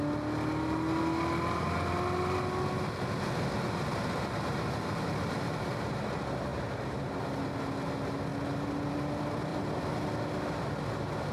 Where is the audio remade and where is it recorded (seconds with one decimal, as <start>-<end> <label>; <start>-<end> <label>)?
0.0-6.5 recorded; 6.5-7.1 remade; 7.1-9.5 recorded; 9.5-10.0 remade; 10.0-11.3 recorded